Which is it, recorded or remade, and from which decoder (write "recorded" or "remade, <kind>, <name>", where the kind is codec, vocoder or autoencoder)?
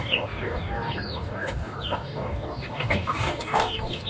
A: remade, codec, DAC